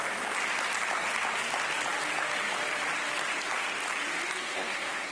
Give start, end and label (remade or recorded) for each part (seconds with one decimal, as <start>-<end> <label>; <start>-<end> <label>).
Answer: 0.0-4.4 recorded; 4.4-5.1 remade